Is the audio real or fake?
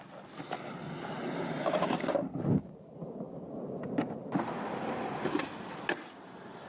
real